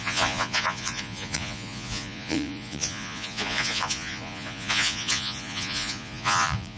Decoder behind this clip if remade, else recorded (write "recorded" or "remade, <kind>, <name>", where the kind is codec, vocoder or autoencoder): remade, vocoder, Vocos